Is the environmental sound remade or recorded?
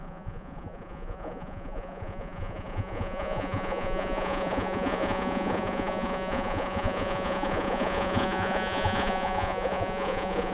remade